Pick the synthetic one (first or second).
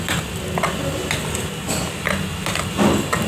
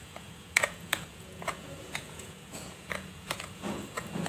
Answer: second